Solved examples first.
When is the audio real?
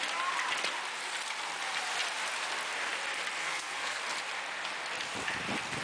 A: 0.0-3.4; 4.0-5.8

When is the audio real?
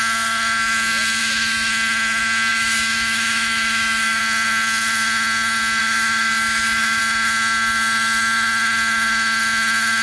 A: 0.0-1.2; 1.7-2.5; 4.2-5.8; 7.0-10.0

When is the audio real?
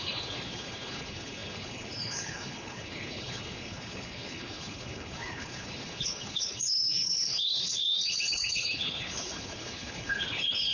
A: none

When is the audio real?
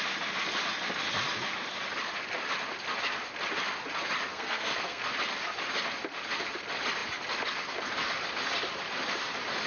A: 0.0-4.3; 5.0-9.7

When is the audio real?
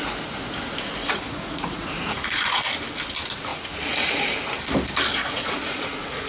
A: 0.0-1.0; 2.6-3.5; 4.3-5.1